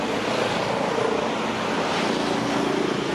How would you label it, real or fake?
real